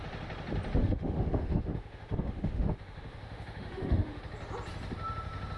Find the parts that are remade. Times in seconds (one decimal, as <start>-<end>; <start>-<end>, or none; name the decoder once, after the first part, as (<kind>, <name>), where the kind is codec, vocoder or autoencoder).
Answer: 0.8-4.2 (autoencoder, DAC-VAE)